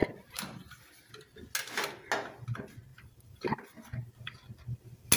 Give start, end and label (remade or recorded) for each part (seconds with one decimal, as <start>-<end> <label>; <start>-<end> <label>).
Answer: 0.0-1.1 remade; 1.1-2.9 recorded; 2.9-4.1 remade; 4.1-5.2 recorded